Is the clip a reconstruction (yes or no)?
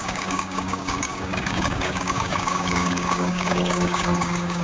yes